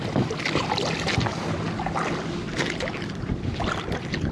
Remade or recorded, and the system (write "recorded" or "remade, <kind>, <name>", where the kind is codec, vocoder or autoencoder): recorded